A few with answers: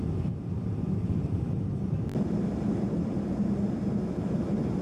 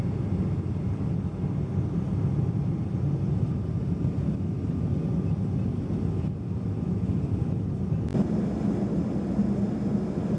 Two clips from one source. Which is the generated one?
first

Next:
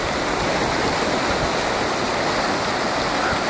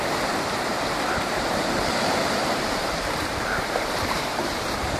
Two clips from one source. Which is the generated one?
second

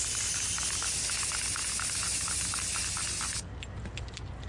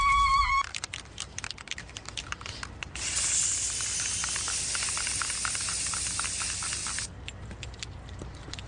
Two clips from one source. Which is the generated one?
second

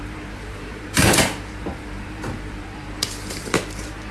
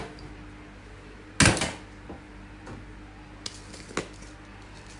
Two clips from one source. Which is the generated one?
first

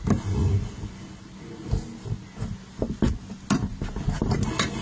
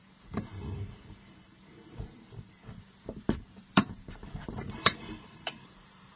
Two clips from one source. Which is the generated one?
second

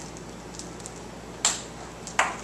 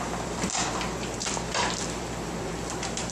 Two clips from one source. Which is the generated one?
second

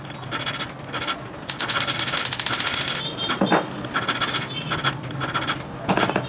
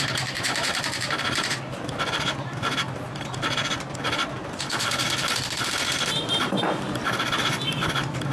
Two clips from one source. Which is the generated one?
second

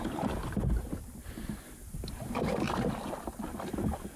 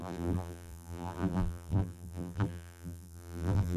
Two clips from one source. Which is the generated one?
second